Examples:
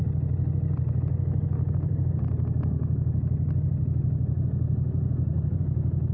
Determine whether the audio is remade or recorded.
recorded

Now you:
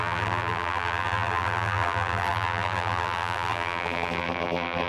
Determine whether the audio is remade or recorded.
remade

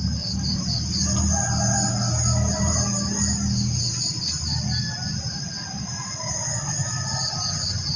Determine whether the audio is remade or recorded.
recorded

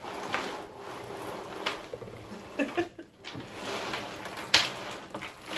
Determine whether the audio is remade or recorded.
recorded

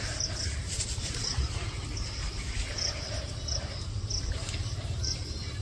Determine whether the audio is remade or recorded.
recorded